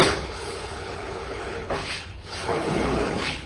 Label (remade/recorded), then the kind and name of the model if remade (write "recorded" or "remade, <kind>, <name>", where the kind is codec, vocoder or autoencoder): remade, codec, HILCodec